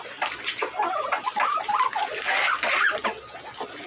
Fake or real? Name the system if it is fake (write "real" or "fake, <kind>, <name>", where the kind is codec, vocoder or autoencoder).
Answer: real